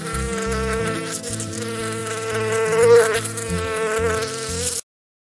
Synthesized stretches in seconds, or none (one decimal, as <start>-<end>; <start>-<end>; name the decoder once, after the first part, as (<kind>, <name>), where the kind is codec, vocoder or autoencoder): none